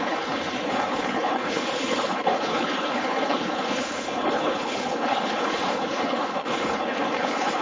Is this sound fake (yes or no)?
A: yes